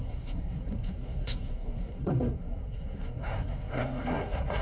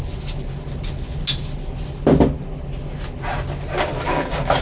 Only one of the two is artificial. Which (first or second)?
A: first